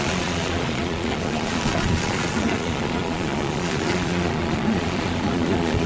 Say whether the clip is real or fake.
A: fake